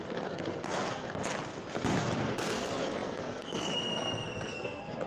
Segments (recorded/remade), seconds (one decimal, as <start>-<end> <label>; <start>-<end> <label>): 0.0-1.2 remade; 1.2-2.0 recorded; 2.0-5.1 remade